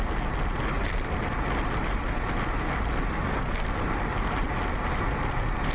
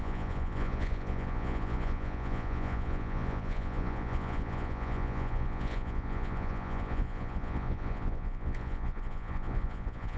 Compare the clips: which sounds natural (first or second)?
first